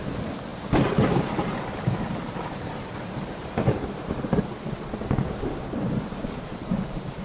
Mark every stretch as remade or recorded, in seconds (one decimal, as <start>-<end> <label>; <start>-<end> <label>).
0.0-0.5 recorded; 0.5-4.8 remade; 4.8-7.2 recorded